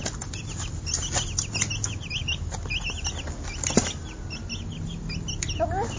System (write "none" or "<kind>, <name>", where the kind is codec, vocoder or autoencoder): none